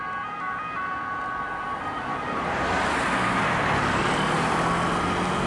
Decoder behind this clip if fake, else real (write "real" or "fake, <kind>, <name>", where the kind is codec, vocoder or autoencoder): real